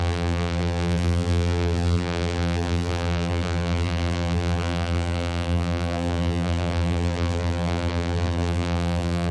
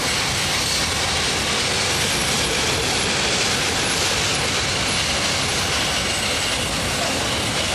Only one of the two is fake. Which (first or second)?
first